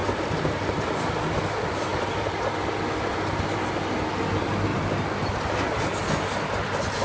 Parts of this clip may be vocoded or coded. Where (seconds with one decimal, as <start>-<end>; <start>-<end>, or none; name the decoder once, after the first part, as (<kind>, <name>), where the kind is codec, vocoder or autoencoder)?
0.0-1.2 (vocoder, BigVGAN v2); 1.9-2.5

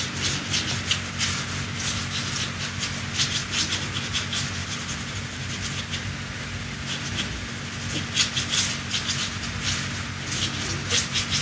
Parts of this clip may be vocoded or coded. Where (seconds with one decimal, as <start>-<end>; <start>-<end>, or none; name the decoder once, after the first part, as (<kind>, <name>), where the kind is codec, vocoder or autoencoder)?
4.6-5.8 (vocoder, BigVGAN v2)